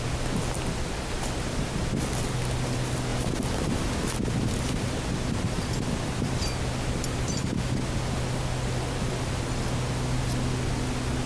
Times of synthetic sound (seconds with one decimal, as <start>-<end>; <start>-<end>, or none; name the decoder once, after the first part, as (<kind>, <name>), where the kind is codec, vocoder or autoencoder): none